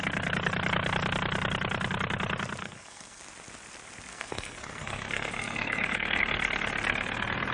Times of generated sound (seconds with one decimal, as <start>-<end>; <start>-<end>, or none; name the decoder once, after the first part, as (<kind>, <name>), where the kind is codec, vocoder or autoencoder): 2.6-3.2 (codec, SNAC); 4.1-6.2